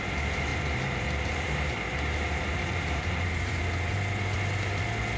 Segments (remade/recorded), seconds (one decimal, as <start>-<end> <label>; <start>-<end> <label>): 0.0-0.5 recorded; 0.5-3.6 remade; 3.6-5.2 recorded